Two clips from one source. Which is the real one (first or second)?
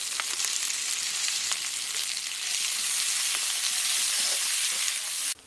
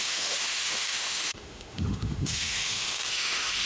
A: first